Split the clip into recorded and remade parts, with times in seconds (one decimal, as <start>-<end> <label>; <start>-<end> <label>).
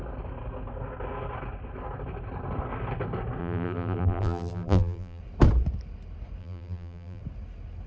0.0-3.4 recorded; 3.4-5.2 remade; 5.2-6.4 recorded; 6.4-7.2 remade; 7.2-7.9 recorded